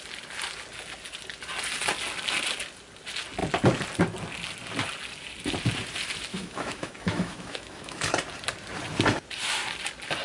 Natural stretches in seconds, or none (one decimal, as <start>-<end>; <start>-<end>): 0.0-6.3; 8.1-10.2